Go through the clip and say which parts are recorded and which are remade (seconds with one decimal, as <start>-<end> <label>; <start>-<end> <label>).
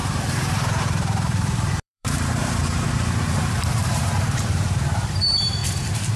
0.0-6.2 remade